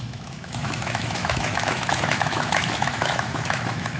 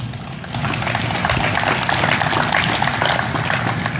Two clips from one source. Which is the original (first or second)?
second